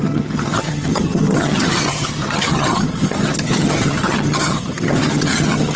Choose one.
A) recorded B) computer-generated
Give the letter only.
B